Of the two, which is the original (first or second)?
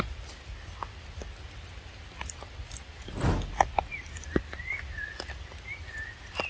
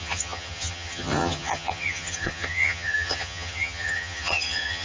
first